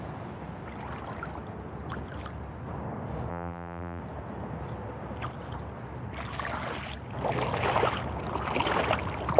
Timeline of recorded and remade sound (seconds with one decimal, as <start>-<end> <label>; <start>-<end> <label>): 0.0-3.3 recorded; 3.3-4.0 remade; 4.0-9.4 recorded